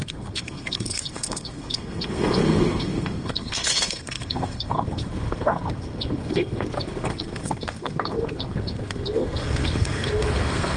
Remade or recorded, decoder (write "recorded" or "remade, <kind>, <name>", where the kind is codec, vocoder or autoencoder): remade, codec, SNAC